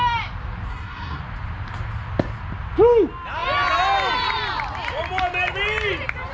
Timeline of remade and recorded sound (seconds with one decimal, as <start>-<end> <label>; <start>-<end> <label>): 0.0-0.7 recorded; 0.7-1.2 remade; 1.2-6.3 recorded